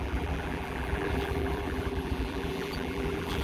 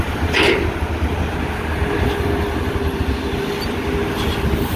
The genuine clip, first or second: second